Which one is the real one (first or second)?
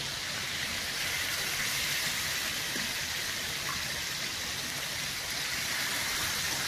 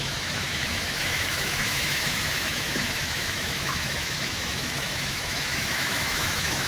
first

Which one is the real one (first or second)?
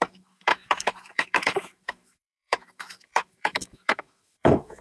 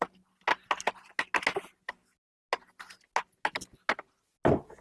second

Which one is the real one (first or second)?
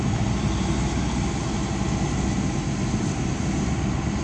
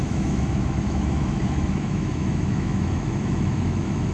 first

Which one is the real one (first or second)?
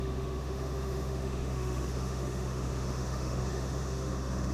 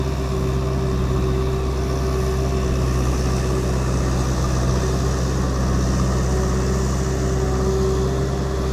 second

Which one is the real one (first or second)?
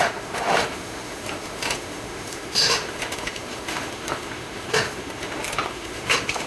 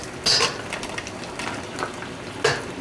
second